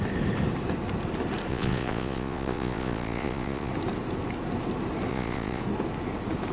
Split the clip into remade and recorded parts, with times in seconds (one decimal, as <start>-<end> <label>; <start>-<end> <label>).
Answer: 0.0-1.5 recorded; 1.5-3.7 remade; 3.7-5.1 recorded; 5.1-5.6 remade; 5.6-6.5 recorded